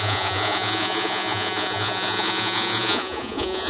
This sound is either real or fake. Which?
fake